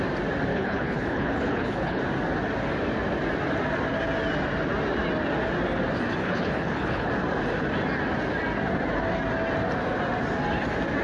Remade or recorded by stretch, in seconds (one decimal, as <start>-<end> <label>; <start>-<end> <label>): 0.0-0.5 recorded; 0.5-2.0 remade; 2.0-6.2 recorded; 6.2-7.1 remade; 7.1-11.0 recorded

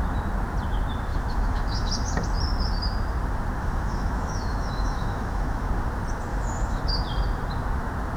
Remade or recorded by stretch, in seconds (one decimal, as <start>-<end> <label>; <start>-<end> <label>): 0.0-1.1 recorded; 1.1-1.9 remade; 1.9-3.6 recorded; 3.6-5.7 remade; 5.7-6.3 recorded; 6.3-6.8 remade; 6.8-8.2 recorded